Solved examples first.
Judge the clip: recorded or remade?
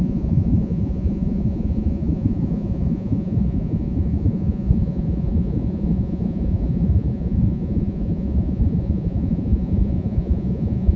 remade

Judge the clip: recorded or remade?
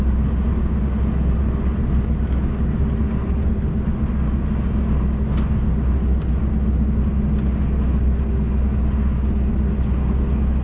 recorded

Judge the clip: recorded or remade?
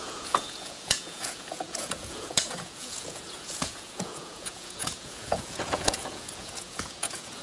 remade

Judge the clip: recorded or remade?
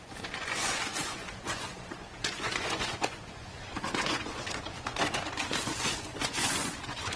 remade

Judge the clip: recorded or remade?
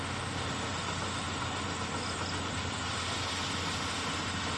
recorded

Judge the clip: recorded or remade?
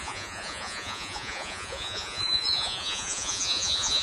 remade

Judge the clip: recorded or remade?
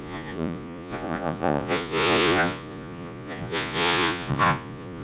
remade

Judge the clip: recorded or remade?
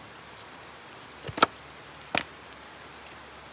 recorded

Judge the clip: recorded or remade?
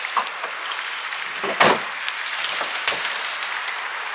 recorded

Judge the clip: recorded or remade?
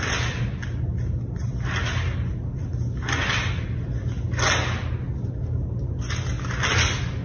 recorded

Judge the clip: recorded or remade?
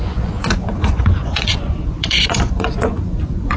remade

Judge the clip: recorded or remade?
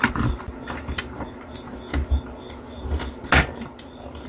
recorded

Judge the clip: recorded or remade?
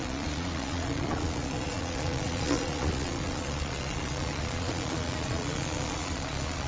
remade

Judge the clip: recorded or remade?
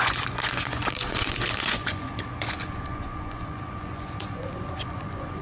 remade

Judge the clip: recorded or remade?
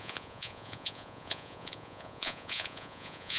remade